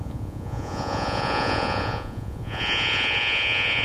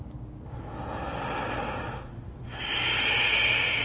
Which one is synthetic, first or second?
first